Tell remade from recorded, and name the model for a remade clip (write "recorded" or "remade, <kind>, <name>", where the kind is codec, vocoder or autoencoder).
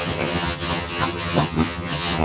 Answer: remade, vocoder, HiFi-GAN